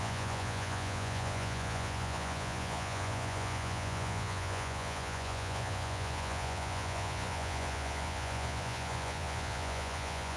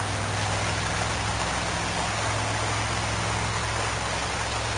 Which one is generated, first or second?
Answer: first